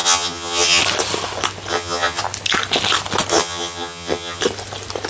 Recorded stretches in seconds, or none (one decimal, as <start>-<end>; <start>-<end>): 0.8-1.7; 2.2-3.3; 4.4-5.1